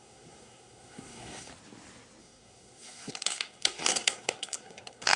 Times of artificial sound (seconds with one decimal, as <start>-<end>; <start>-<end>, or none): 0.0-1.5; 2.2-5.2